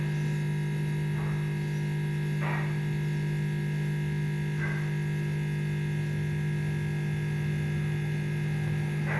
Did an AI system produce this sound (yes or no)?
no